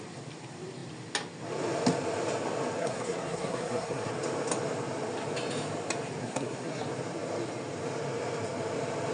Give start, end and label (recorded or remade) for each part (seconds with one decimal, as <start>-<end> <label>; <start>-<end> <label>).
0.0-2.8 recorded; 2.8-4.1 remade; 4.1-6.2 recorded; 6.2-6.8 remade; 6.8-9.1 recorded